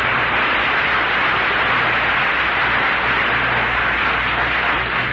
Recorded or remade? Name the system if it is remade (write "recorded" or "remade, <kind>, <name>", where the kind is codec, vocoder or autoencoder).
recorded